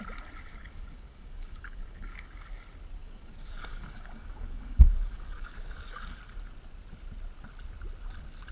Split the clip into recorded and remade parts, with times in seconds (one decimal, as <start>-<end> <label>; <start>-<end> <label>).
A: 0.0-0.5 recorded; 0.5-2.5 remade; 2.5-3.0 recorded; 3.0-6.2 remade; 6.2-8.5 recorded